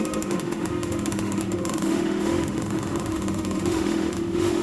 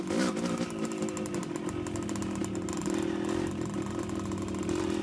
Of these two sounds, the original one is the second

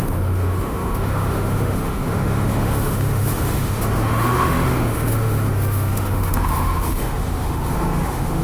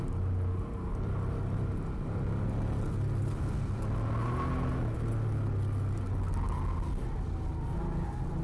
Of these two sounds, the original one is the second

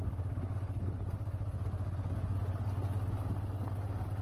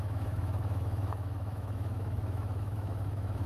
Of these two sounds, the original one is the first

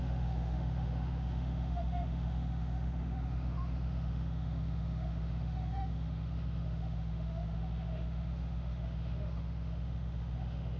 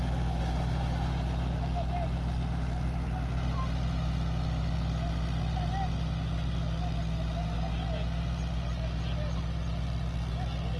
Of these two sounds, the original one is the second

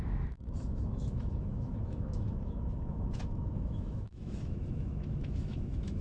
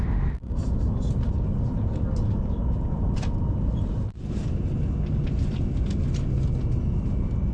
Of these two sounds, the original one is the second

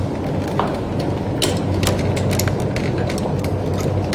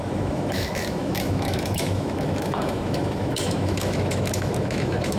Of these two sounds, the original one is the first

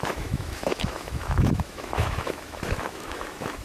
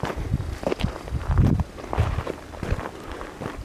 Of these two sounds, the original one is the second